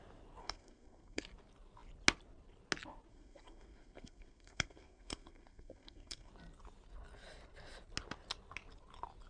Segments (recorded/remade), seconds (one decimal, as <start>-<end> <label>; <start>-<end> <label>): 0.0-0.4 recorded; 0.4-1.2 remade; 1.2-3.1 recorded; 3.1-6.3 remade; 6.3-9.3 recorded